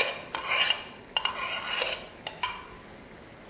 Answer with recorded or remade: recorded